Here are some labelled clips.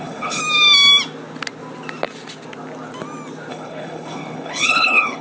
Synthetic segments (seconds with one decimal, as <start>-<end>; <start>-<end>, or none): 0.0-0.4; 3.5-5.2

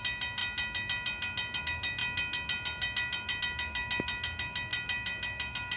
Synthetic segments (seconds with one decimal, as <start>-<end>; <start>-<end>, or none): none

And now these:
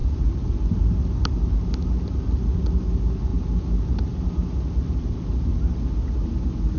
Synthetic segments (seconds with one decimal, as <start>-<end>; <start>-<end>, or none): none

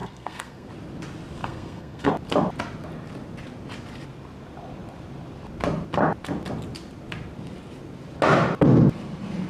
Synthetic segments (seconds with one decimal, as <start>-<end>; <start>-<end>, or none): 0.0-0.7; 1.4-2.1

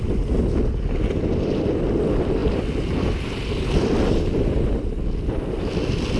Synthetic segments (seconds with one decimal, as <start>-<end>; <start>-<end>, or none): 2.4-4.2

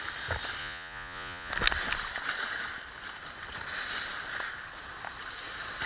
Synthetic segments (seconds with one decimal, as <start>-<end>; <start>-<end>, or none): 0.6-1.5